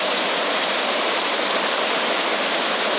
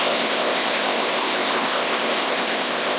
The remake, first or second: second